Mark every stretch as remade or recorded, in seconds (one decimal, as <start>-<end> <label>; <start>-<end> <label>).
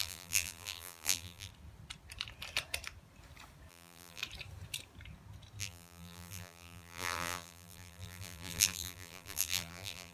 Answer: 0.0-1.5 remade; 1.5-3.7 recorded; 3.7-4.2 remade; 4.2-5.6 recorded; 5.6-10.1 remade